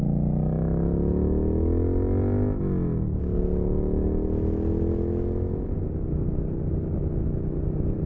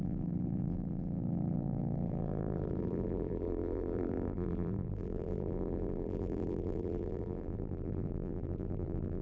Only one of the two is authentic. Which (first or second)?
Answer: first